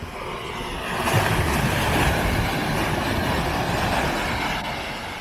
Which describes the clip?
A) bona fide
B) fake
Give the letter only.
A